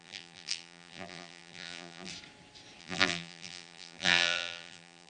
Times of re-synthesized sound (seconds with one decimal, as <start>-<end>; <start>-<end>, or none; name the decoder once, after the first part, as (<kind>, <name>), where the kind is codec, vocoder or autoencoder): 0.0-2.1 (vocoder, BigVGAN v2); 2.8-5.1